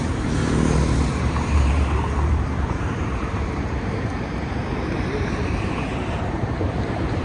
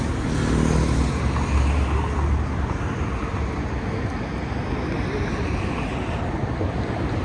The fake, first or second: first